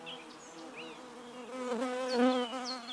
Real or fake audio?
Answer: real